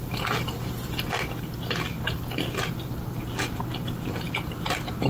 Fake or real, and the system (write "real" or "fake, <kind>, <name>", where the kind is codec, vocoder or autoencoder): real